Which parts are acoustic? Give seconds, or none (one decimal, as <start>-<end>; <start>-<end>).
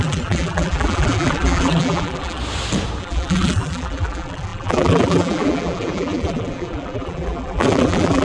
2.4-3.0